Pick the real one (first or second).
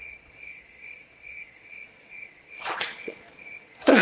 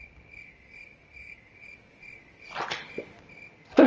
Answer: second